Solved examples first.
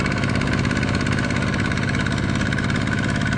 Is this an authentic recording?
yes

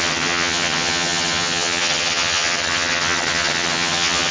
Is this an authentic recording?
no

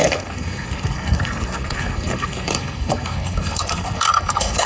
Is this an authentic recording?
no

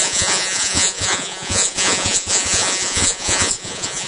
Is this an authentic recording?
no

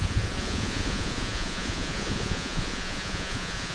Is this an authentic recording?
no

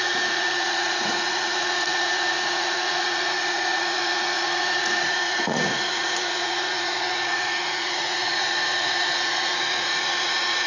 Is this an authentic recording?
no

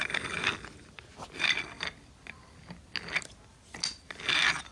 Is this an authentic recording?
yes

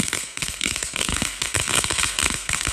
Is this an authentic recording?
no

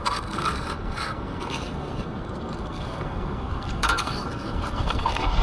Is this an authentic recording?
no